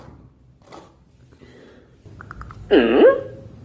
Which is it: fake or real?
real